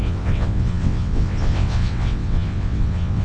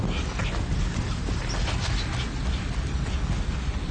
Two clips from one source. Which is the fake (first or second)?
first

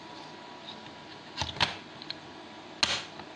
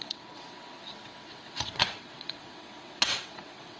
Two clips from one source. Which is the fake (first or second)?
second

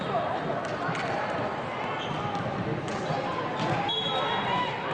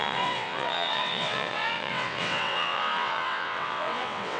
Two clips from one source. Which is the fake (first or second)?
second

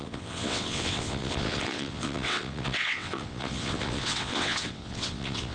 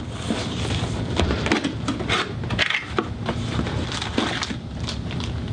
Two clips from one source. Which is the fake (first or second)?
first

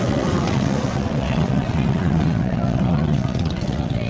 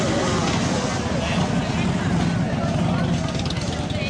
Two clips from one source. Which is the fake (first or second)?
first